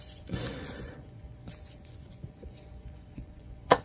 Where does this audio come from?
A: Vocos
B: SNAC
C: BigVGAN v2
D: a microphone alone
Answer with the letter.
A